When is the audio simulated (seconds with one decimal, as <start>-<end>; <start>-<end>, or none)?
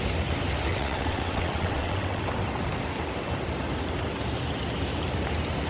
0.7-2.2